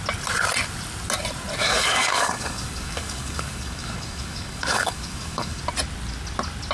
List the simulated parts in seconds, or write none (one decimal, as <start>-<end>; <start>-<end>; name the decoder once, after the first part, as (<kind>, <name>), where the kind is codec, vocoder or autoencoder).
1.6-5.6 (codec, DAC)